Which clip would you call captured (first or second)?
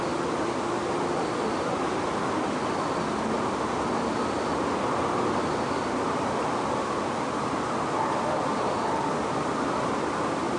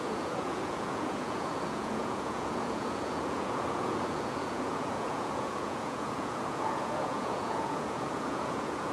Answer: first